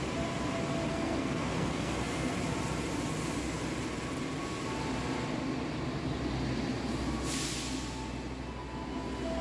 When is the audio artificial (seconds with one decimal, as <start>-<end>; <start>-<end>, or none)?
0.9-2.3